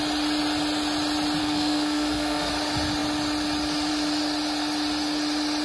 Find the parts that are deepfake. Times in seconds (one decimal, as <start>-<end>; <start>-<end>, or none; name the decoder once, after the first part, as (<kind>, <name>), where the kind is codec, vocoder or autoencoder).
1.4-2.5 (codec, SNAC)